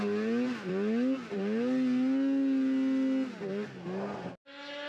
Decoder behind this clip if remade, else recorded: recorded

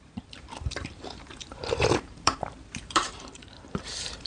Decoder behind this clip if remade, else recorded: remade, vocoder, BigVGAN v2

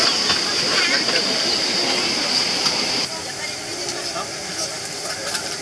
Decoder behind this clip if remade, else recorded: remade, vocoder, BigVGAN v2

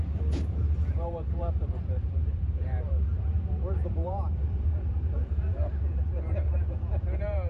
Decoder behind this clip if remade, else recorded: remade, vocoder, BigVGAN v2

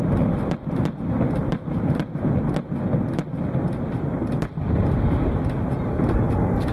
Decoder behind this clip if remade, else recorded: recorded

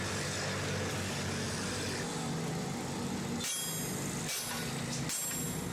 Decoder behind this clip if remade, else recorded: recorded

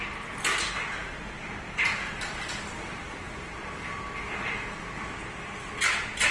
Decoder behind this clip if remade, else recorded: recorded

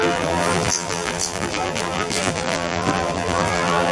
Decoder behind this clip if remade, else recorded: remade, vocoder, BigVGAN v2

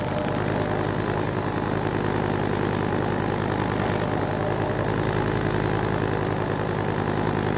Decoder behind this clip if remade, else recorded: recorded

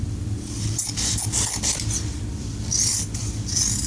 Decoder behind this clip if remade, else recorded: remade, vocoder, BigVGAN v2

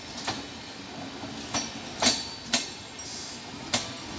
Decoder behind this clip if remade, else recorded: recorded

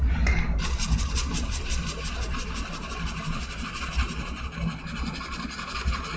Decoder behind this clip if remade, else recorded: remade, vocoder, BigVGAN v2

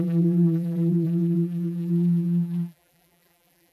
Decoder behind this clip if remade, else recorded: remade, vocoder, BigVGAN v2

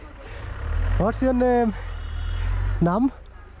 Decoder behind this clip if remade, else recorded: recorded